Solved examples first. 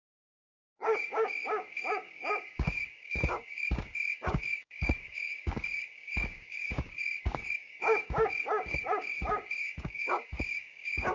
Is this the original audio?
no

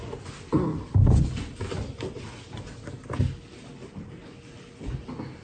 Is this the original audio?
yes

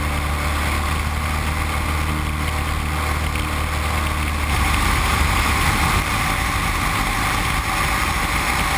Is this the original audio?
yes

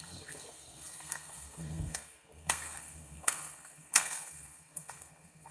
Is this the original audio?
no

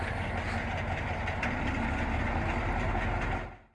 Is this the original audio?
yes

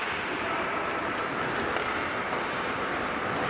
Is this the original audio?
yes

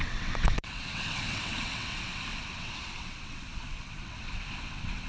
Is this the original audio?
no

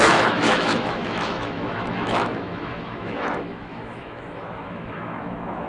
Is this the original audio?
no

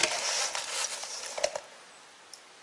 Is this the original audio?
yes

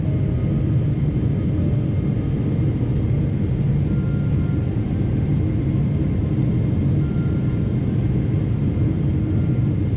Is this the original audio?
yes